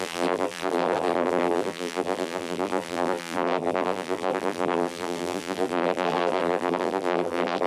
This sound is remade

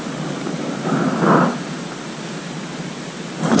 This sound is recorded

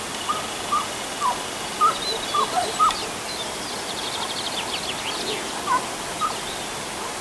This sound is recorded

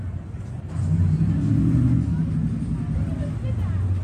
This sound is recorded